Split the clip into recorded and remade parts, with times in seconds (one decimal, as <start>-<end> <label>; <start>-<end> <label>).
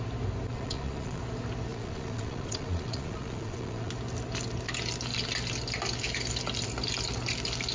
0.0-0.5 recorded; 0.5-1.2 remade; 1.2-1.7 recorded; 1.7-3.9 remade; 3.9-7.7 recorded